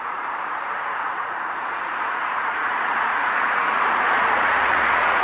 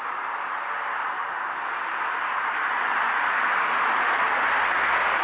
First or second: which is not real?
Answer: first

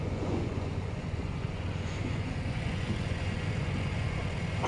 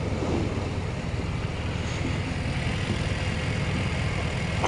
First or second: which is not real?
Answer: first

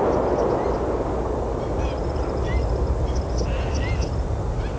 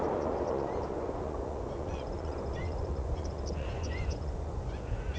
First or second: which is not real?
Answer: second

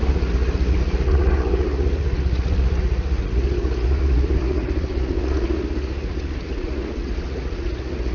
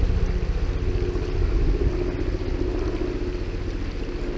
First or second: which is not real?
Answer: first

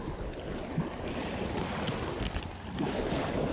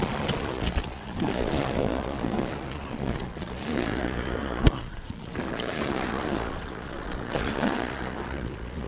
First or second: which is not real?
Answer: second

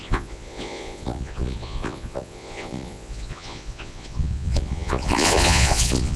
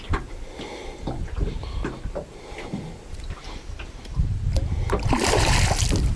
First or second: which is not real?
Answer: first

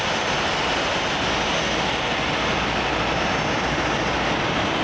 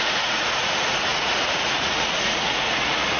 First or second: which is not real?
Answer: second